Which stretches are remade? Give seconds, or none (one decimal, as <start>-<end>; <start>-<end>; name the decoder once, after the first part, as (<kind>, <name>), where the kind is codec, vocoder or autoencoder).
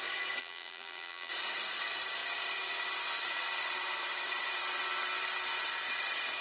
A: 0.4-1.3 (vocoder, BigVGAN v2)